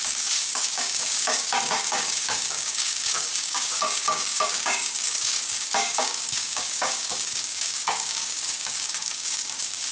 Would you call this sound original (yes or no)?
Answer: no